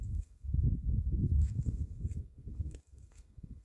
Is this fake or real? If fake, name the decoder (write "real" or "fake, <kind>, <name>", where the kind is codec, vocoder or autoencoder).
fake, codec, SNAC